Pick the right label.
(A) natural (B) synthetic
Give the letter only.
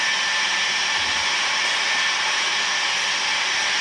A